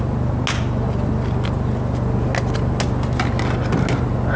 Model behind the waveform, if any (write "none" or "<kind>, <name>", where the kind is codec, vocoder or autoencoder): none